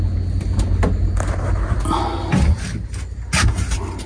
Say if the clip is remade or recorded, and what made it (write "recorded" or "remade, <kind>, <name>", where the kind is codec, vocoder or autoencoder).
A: recorded